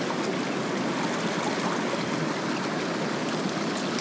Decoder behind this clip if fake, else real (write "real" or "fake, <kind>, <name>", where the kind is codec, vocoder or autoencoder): real